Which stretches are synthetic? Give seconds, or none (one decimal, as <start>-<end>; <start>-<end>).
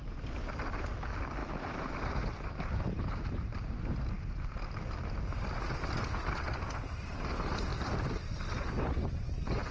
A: 1.4-4.1; 7.7-9.1